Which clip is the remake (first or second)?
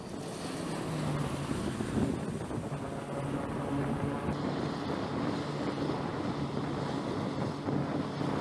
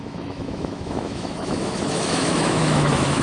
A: second